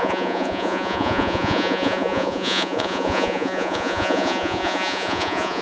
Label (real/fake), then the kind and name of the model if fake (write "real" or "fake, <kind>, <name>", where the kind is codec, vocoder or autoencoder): fake, vocoder, Vocos